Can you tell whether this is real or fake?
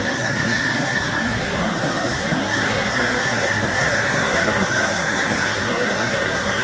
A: fake